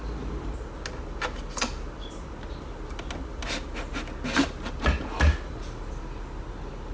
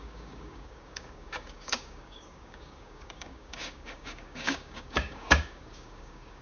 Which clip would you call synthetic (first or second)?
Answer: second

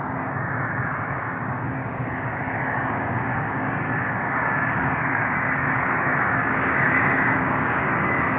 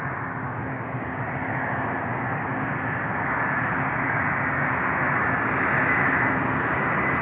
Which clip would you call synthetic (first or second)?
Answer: first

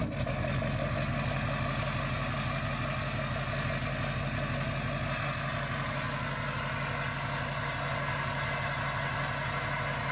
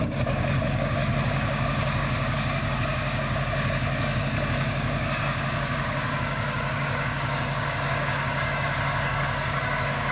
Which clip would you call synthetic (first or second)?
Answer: second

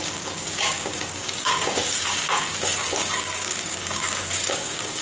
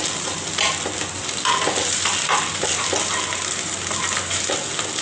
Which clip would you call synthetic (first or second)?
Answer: first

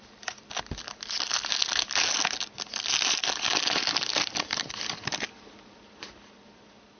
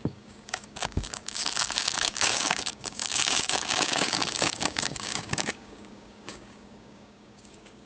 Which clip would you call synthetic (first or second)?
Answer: second